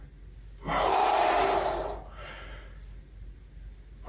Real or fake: real